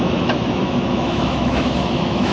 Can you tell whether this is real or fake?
fake